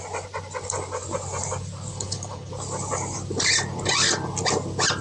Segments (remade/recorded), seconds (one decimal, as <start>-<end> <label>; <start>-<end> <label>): 0.0-1.9 recorded; 1.9-2.5 remade; 2.5-5.0 recorded